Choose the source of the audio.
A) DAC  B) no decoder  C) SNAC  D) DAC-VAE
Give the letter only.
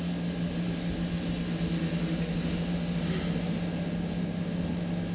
B